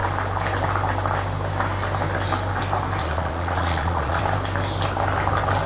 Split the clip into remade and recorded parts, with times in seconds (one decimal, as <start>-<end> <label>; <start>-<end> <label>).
0.0-3.0 recorded; 3.0-4.2 remade; 4.2-5.7 recorded